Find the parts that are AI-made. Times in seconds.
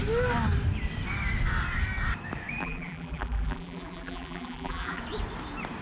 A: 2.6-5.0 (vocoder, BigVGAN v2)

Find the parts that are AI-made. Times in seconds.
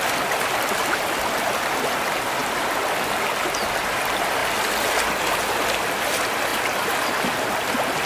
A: none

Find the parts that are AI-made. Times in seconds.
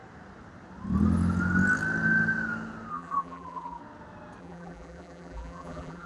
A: 2.9-3.8 (vocoder, BigVGAN v2); 4.4-6.1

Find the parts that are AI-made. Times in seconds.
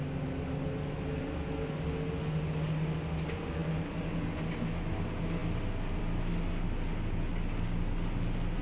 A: none